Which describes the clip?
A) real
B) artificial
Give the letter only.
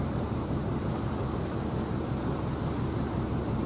B